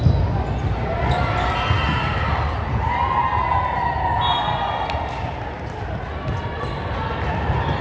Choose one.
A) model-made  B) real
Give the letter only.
B